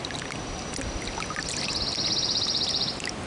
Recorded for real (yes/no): yes